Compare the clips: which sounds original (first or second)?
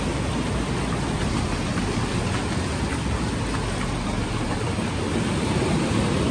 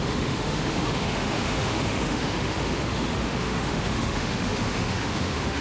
first